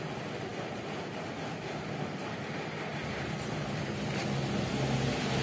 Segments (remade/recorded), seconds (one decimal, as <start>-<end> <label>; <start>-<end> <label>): 0.0-5.4 recorded